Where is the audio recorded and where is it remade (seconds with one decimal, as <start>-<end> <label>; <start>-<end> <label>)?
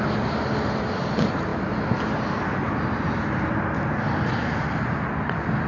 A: 0.0-5.7 recorded